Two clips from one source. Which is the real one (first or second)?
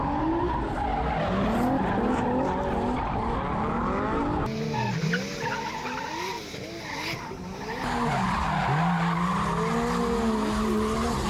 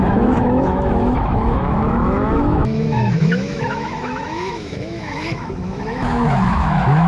first